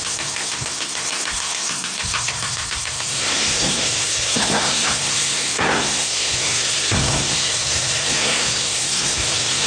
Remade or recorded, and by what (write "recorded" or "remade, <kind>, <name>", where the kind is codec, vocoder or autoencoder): remade, codec, SNAC